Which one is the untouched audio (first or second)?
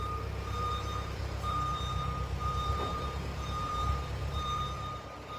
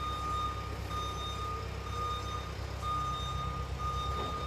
second